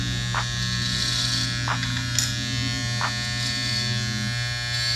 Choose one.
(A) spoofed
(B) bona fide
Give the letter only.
B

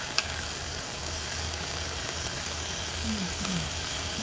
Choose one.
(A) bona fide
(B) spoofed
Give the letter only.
B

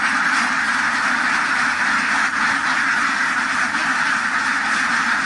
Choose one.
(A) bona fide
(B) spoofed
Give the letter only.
A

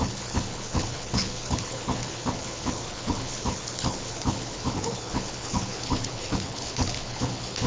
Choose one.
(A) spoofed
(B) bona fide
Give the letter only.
A